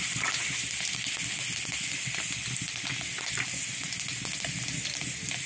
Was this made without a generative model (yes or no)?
yes